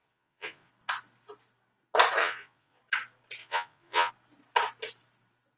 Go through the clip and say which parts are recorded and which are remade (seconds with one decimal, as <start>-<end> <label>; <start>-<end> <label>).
0.0-0.7 remade; 0.7-2.2 recorded; 2.2-2.8 remade; 2.8-3.4 recorded; 3.4-4.1 remade; 4.1-5.6 recorded